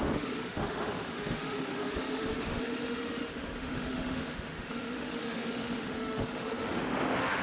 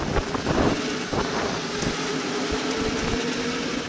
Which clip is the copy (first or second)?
first